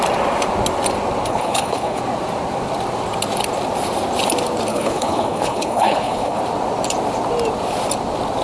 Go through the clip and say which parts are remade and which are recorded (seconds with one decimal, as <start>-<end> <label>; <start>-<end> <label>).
0.0-1.3 recorded; 1.3-2.0 remade; 2.0-4.7 recorded; 4.7-6.4 remade; 6.4-8.4 recorded